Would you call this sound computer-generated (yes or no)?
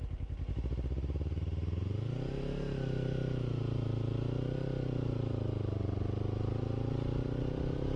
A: no